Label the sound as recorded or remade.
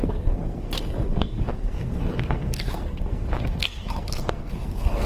remade